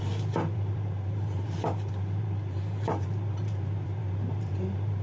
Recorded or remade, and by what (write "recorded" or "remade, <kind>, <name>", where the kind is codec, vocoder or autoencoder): remade, vocoder, BigVGAN v2